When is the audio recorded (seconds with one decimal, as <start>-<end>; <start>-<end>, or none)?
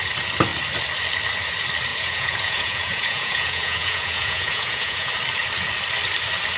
0.0-1.9; 5.1-6.6